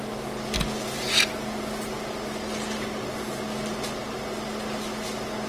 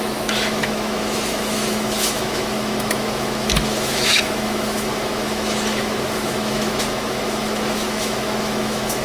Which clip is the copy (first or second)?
second